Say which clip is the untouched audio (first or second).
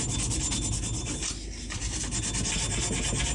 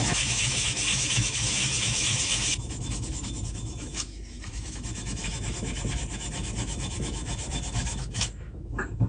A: first